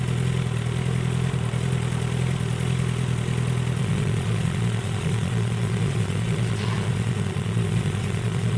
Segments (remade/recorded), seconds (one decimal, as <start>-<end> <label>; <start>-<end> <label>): 0.0-3.8 recorded; 3.8-8.6 remade